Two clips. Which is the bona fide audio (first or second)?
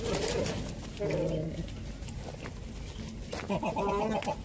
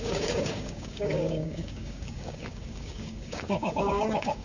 first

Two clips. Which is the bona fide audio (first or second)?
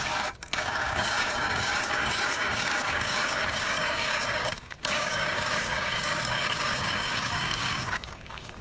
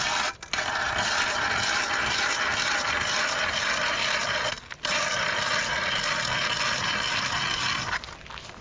second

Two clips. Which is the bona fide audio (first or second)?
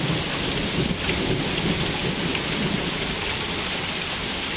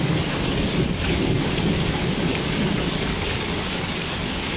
first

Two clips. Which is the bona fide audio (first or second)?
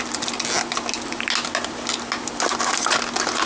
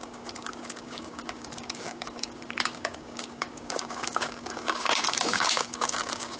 first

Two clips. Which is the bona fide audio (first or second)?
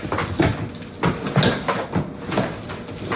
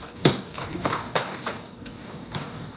first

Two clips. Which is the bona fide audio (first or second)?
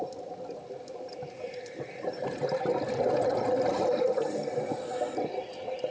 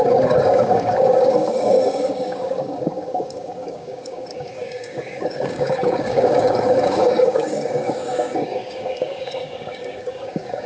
first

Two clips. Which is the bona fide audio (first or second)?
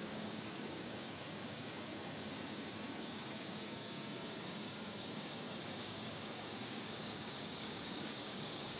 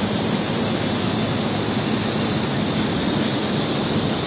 second